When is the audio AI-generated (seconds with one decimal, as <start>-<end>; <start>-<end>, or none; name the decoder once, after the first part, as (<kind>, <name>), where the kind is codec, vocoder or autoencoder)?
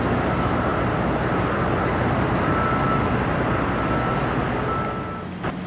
none